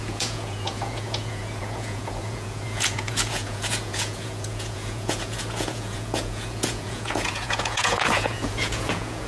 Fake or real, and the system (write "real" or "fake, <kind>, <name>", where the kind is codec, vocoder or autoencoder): fake, vocoder, Vocos